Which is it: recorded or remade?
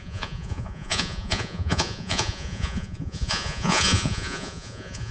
remade